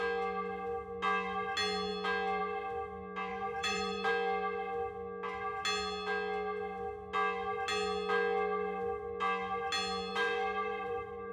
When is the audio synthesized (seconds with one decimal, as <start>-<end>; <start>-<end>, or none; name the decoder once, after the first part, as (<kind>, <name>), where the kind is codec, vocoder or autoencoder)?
3.3-4.1 (vocoder, BigVGAN v2); 10.1-11.3